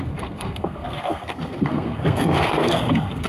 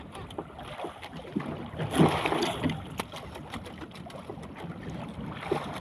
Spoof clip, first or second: first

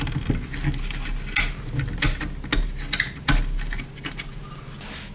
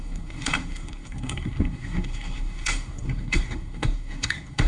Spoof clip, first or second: second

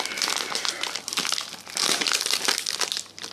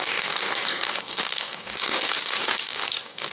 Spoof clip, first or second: second